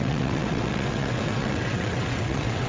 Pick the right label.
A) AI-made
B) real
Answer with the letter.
A